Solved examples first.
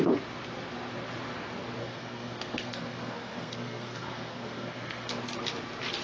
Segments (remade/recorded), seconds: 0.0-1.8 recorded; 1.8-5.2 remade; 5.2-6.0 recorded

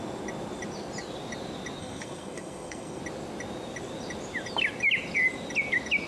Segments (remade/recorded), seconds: 0.0-1.8 recorded; 1.8-3.0 remade; 3.0-6.1 recorded

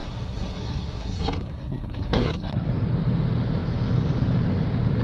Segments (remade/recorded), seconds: 0.0-2.7 remade; 2.7-5.0 recorded